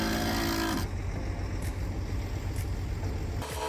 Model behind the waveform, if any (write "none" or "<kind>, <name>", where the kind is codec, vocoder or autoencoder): none